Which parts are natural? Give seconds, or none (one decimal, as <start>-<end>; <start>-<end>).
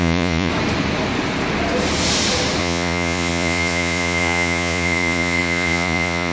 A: 0.5-2.6